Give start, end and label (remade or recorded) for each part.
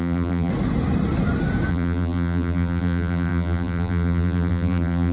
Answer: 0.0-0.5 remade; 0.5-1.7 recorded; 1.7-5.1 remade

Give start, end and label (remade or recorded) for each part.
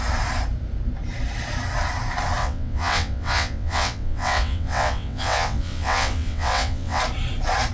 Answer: 0.0-2.4 recorded; 2.4-7.0 remade; 7.0-7.7 recorded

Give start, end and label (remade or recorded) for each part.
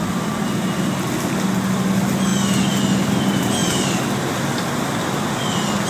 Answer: 0.0-5.9 recorded